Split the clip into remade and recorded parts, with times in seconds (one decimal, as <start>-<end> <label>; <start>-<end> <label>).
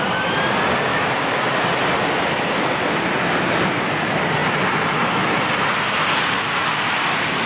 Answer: 0.0-0.9 recorded; 0.9-1.5 remade; 1.5-7.5 recorded